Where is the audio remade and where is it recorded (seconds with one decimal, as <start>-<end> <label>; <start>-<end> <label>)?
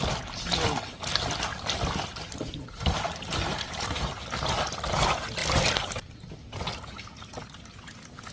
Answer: 0.0-1.5 recorded; 1.5-3.8 remade; 3.8-5.4 recorded; 5.4-6.5 remade; 6.5-8.3 recorded